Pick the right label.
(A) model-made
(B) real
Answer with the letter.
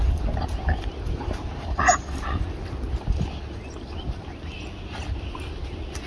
B